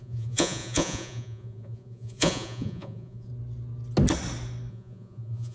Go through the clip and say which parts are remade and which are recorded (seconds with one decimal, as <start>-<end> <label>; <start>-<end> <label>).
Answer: 0.0-3.3 remade; 3.3-4.7 recorded; 4.7-5.5 remade